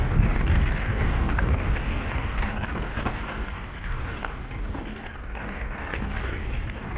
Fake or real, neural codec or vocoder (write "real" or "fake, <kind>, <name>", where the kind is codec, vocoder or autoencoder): fake, codec, DAC